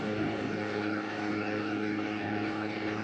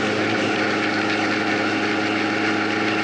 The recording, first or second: second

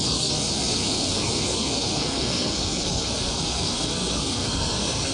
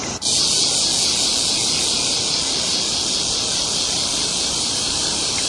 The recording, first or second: second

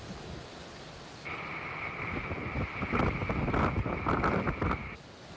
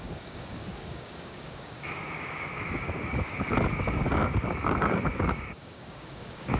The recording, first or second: first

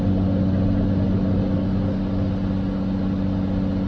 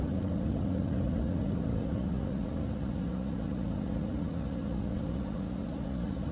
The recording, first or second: first